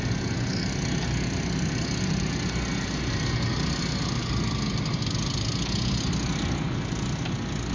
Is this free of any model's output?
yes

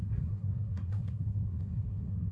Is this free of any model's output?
no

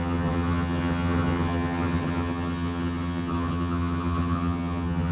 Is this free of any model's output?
no